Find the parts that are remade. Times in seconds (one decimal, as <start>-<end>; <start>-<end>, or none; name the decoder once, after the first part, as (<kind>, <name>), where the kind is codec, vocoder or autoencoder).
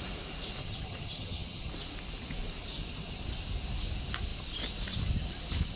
0.6-1.7 (vocoder, HiFi-GAN)